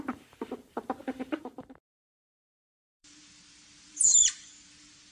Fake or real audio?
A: fake